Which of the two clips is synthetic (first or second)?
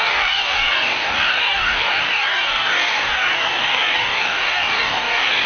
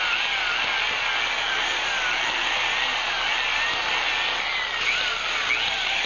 first